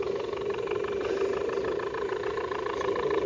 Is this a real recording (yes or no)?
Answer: yes